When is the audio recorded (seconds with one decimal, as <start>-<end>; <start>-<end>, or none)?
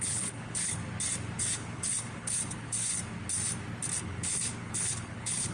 0.8-1.4; 2.9-4.0